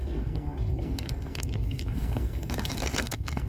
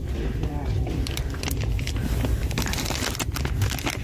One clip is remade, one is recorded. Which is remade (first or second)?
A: first